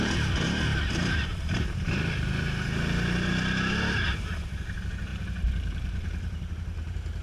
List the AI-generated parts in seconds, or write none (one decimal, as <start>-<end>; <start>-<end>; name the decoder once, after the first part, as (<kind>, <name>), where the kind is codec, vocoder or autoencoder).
0.0-7.2 (vocoder, BigVGAN v2)